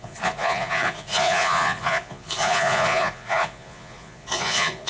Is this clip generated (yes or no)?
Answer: yes